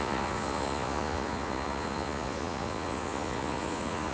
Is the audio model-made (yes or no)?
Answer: yes